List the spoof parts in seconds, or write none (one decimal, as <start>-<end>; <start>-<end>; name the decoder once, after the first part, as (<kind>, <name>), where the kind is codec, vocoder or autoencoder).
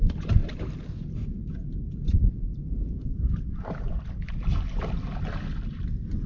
0.4-4.2 (vocoder, BigVGAN v2)